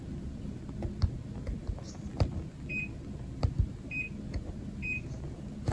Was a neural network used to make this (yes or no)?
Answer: no